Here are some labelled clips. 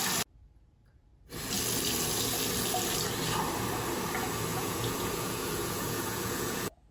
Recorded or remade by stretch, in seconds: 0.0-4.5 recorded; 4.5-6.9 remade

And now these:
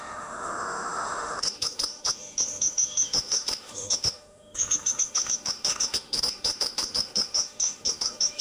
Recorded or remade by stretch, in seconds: 0.0-8.4 remade

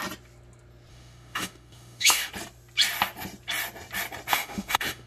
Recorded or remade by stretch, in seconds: 0.0-0.9 recorded; 0.9-2.3 remade; 2.3-4.3 recorded; 4.3-5.1 remade

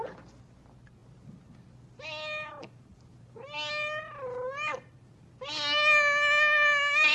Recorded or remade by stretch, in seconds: 0.0-7.1 recorded

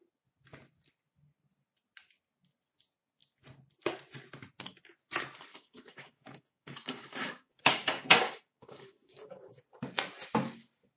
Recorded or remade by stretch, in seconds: 0.0-5.5 recorded; 5.5-9.6 remade; 9.6-11.0 recorded